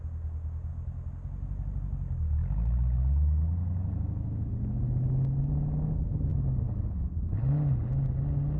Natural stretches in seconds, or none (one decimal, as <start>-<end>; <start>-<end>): 0.0-8.6